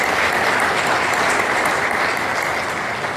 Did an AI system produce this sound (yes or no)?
no